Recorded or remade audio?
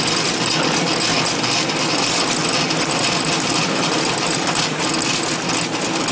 recorded